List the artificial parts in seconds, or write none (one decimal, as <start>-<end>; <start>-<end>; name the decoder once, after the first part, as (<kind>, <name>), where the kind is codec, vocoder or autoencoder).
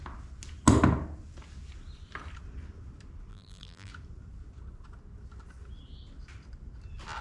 3.3-3.9 (vocoder, BigVGAN v2)